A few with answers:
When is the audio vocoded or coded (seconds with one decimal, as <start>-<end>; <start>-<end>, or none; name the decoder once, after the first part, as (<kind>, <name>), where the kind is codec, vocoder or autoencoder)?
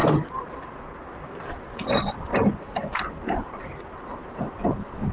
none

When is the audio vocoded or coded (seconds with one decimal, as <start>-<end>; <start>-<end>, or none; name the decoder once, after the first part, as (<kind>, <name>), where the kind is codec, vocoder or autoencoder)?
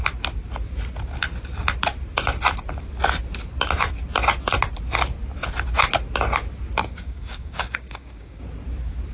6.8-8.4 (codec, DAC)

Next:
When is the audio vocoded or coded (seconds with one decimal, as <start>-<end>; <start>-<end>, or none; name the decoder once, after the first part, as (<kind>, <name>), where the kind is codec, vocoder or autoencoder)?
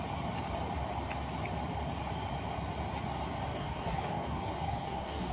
3.5-5.3 (codec, DAC)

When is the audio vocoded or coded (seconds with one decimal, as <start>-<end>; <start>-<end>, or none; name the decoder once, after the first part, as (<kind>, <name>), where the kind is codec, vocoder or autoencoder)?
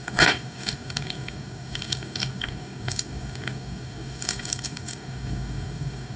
0.0-6.2 (codec, DAC)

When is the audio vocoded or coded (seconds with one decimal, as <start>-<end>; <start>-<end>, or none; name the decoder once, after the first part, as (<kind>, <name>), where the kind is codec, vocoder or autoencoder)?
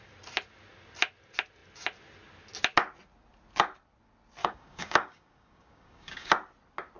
4.4-6.3 (codec, DAC)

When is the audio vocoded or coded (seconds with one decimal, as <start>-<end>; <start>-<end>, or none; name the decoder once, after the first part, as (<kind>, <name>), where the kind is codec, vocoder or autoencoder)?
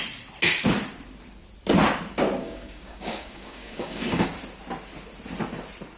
2.4-4.3 (codec, DAC)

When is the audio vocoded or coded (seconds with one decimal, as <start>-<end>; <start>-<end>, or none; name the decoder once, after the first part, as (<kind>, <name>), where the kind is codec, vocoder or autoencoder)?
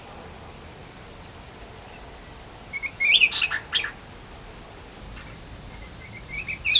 none